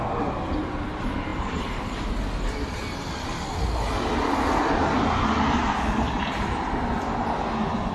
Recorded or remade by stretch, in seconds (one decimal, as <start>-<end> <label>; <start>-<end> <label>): 0.0-1.3 recorded; 1.3-2.1 remade; 2.1-7.9 recorded